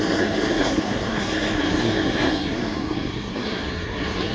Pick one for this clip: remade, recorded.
remade